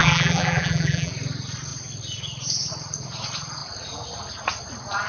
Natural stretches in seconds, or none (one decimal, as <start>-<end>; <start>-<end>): 1.1-5.1